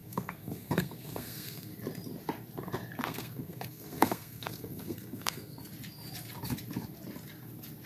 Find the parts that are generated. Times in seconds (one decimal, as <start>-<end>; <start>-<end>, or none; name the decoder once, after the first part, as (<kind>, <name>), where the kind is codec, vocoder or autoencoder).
0.0-1.7 (codec, SNAC); 3.1-5.6